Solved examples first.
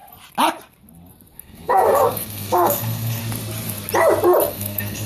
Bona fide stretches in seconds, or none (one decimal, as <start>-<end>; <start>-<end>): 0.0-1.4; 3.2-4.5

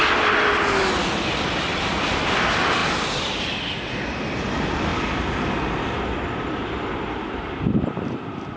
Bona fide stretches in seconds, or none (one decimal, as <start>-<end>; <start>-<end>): 0.0-8.6

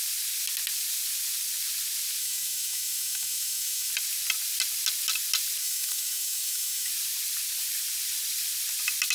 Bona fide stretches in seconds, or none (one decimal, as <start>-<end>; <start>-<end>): 0.0-2.2; 3.9-5.6; 6.9-9.1

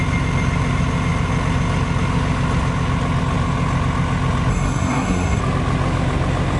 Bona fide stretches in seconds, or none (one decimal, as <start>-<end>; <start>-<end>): 0.0-4.5; 5.4-6.6

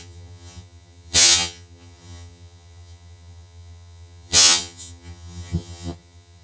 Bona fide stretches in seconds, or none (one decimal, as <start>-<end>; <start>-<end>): none

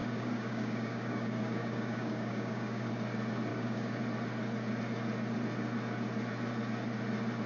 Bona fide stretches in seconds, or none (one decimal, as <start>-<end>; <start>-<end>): 2.9-3.5; 4.0-7.5